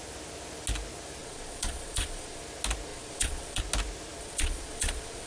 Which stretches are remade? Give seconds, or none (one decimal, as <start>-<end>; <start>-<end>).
1.2-2.4; 2.9-3.6; 4.2-5.3